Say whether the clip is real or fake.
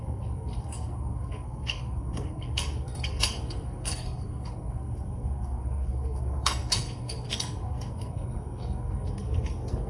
fake